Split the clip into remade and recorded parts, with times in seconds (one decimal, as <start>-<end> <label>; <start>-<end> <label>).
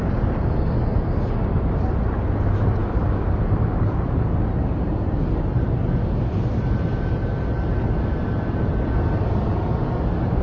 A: 0.0-10.4 recorded